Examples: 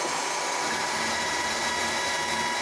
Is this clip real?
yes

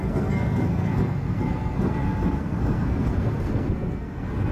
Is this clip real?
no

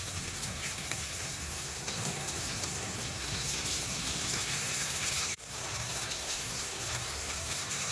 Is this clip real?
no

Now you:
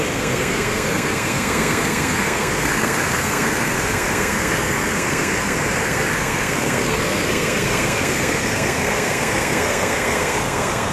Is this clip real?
no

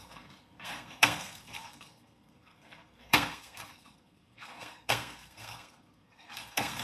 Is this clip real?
no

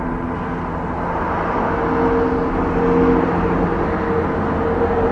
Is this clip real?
yes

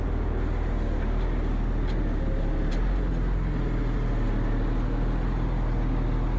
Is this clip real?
yes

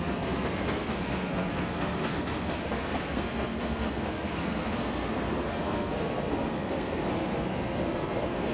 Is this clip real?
no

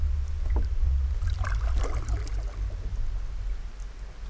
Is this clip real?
yes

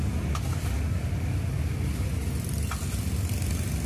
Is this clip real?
yes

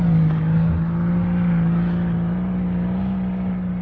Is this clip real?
yes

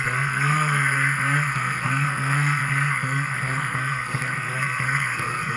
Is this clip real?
no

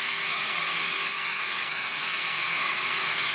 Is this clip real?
no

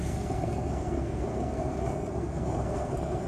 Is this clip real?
no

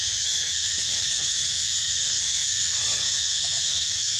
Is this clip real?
no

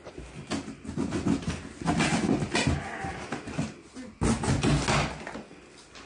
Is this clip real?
yes